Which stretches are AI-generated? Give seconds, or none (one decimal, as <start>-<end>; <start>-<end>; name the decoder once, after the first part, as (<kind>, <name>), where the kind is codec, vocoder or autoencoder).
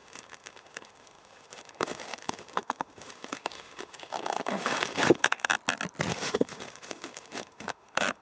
0.0-5.5 (autoencoder, DAC-VAE); 6.1-8.2